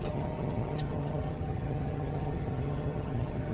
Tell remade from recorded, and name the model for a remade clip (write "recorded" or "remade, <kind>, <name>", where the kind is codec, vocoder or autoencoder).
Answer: remade, vocoder, HiFi-GAN